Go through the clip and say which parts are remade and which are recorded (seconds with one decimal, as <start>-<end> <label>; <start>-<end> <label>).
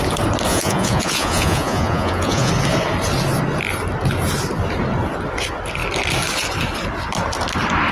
0.0-0.5 recorded; 0.5-2.5 remade; 2.5-7.9 recorded